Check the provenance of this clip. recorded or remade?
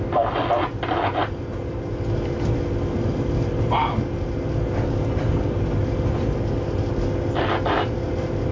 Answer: recorded